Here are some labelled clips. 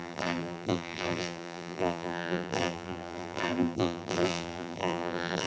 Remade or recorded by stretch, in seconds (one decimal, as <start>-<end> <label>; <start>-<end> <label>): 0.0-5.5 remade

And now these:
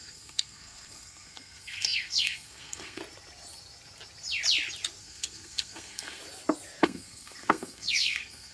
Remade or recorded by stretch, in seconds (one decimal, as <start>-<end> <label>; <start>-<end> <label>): 0.0-3.0 remade; 3.0-5.0 recorded; 5.0-6.2 remade; 6.2-6.8 recorded; 6.8-8.5 remade

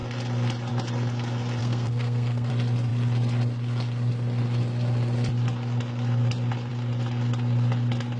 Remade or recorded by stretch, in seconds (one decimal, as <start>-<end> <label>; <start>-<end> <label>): 0.0-1.6 recorded; 1.6-2.5 remade; 2.5-8.2 recorded

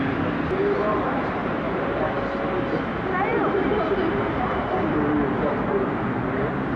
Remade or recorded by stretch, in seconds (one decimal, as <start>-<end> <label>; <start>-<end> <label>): 0.0-1.4 recorded; 1.4-2.1 remade; 2.1-6.8 recorded

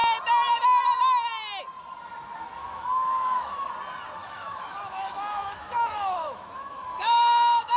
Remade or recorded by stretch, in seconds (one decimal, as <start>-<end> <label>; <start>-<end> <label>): 0.0-2.6 recorded; 2.6-3.7 remade; 3.7-4.2 recorded; 4.2-7.8 remade

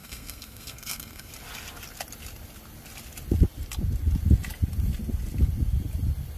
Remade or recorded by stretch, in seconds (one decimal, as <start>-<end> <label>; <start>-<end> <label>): 0.0-1.3 remade; 1.3-6.4 recorded